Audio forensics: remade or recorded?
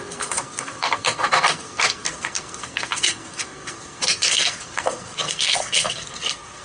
remade